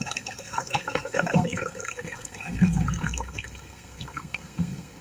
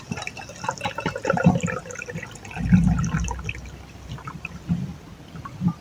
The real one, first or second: second